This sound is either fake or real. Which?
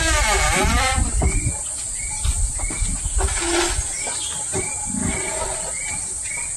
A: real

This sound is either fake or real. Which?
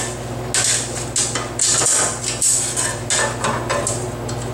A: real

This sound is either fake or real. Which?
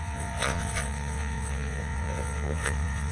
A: fake